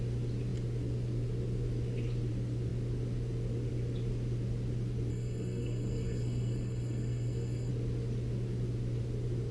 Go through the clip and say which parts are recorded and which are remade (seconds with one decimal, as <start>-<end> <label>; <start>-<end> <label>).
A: 0.0-5.1 recorded; 5.1-7.7 remade; 7.7-9.5 recorded